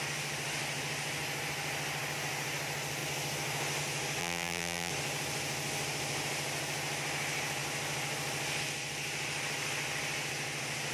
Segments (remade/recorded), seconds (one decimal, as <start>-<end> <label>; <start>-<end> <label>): 0.0-4.2 recorded; 4.2-4.9 remade; 4.9-10.9 recorded

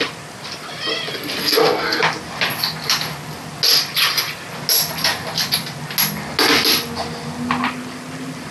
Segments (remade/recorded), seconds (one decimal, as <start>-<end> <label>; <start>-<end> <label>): 0.0-1.4 recorded; 1.4-2.0 remade; 2.0-8.5 recorded